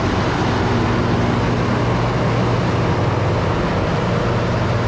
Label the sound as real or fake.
real